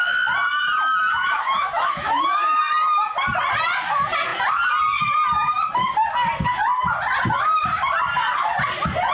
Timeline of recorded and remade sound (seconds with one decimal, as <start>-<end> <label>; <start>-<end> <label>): 0.0-1.2 recorded; 1.2-2.6 remade; 2.6-9.1 recorded